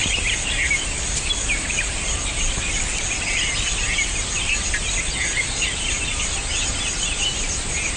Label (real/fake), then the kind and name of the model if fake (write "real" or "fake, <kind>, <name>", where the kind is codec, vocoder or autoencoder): real